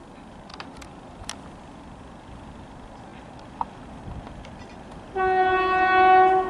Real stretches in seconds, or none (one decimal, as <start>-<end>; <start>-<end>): 0.0-6.5